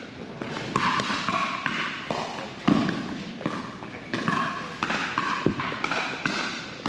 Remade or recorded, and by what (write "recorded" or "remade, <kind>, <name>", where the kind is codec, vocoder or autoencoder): recorded